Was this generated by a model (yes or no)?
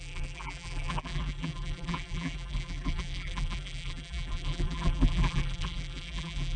yes